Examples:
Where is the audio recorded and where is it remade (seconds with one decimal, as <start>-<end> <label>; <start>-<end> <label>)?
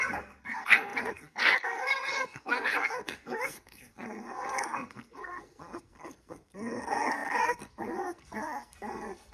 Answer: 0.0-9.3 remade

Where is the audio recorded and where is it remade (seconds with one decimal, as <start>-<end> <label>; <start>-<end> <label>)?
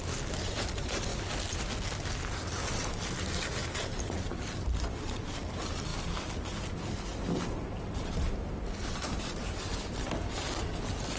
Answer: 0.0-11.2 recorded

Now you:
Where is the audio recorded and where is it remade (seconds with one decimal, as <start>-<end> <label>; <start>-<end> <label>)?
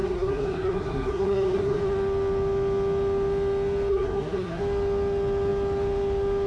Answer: 0.0-1.8 remade; 1.8-3.9 recorded; 3.9-4.6 remade; 4.6-6.5 recorded